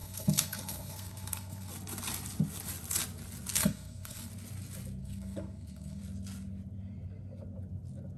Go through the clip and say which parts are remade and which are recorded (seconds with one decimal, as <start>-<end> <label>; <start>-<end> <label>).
0.0-1.7 remade; 1.7-3.5 recorded; 3.5-4.3 remade; 4.3-5.0 recorded; 5.0-6.0 remade; 6.0-8.2 recorded